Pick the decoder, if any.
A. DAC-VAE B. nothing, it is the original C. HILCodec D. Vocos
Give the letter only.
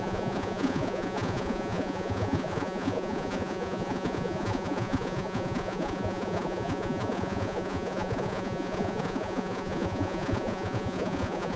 D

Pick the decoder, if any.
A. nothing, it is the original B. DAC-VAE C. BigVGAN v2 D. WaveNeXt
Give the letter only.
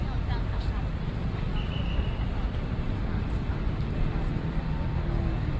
A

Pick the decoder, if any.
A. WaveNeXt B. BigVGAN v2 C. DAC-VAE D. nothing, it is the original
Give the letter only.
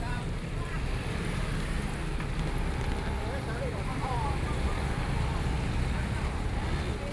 D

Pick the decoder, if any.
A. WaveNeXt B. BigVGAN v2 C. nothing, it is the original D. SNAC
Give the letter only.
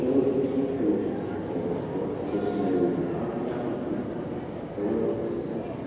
C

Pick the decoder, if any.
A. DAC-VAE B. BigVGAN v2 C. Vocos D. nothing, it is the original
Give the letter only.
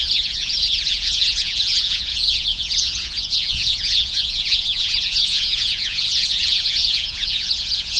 C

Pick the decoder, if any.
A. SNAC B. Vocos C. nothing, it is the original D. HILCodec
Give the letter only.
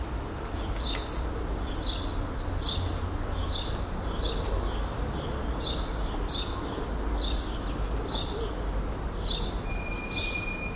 C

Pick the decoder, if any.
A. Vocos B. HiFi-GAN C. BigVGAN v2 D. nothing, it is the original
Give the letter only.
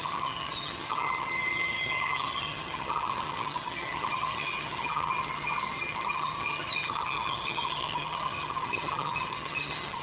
B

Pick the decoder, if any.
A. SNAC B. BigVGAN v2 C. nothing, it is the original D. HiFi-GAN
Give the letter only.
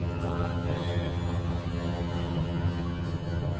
D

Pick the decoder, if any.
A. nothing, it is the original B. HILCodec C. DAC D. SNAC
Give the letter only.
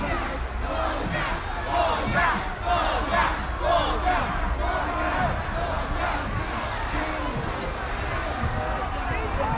A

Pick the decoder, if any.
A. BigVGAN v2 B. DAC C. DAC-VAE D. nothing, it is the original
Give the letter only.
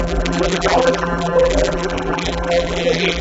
A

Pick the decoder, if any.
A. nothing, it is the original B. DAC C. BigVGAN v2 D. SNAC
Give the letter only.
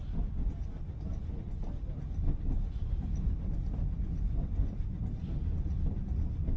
A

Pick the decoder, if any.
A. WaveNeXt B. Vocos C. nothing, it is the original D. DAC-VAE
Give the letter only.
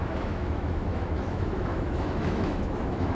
D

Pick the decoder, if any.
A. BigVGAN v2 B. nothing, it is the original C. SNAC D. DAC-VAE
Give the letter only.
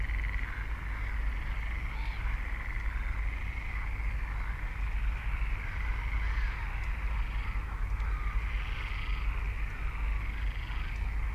B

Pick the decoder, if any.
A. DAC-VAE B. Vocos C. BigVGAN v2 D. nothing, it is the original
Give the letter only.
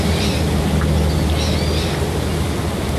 D